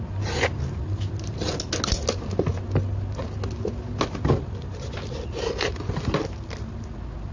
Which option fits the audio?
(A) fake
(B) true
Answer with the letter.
B